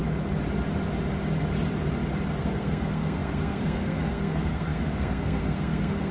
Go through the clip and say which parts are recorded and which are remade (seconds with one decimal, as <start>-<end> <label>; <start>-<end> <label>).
0.0-2.4 recorded; 2.4-6.1 remade